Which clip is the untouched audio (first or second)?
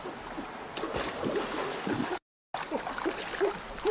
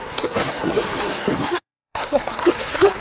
first